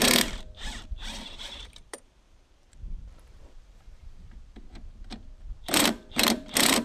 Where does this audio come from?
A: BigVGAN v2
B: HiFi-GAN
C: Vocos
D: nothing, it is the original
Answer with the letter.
A